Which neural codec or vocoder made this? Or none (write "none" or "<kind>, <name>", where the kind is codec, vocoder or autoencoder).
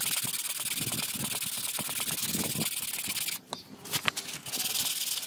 none